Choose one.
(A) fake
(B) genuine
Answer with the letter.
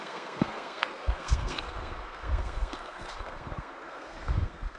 A